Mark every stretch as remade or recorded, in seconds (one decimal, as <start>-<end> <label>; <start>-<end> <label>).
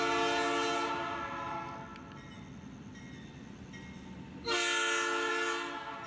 0.0-6.1 recorded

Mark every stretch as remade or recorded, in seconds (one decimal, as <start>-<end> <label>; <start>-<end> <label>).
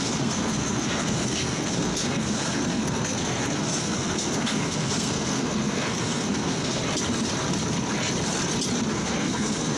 0.0-6.8 remade; 6.8-8.9 recorded; 8.9-9.8 remade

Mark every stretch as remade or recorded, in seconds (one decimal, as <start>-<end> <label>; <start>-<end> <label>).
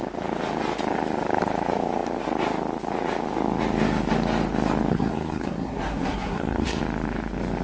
0.0-4.9 recorded; 4.9-6.8 remade; 6.8-7.6 recorded